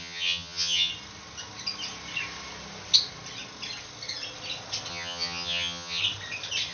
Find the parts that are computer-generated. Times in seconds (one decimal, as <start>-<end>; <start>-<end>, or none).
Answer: 0.0-0.9; 4.9-6.0